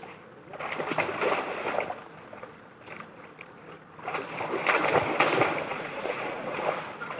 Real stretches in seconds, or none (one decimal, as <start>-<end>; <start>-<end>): 0.0-5.7; 6.7-7.2